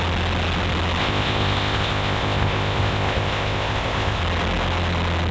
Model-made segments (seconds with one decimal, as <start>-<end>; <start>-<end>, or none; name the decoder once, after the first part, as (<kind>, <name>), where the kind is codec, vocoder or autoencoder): 1.0-4.2 (codec, ZipCodec)